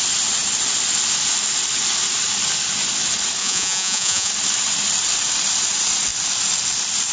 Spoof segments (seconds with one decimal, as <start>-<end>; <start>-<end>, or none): 3.4-4.3